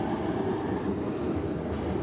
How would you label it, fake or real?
real